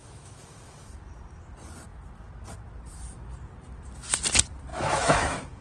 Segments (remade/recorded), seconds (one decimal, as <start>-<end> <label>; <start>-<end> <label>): 0.0-1.1 remade; 1.1-4.7 recorded; 4.7-5.6 remade